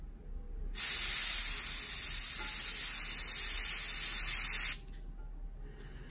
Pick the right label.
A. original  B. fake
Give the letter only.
A